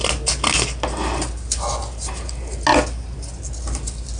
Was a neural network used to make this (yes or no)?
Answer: no